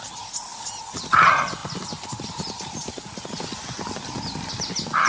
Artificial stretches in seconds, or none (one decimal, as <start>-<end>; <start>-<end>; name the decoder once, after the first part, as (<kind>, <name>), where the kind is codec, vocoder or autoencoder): none